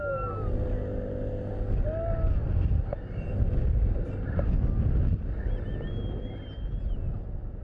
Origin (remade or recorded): recorded